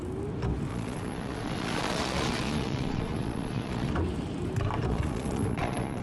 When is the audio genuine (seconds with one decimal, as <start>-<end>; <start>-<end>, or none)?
0.0-0.7; 3.9-4.9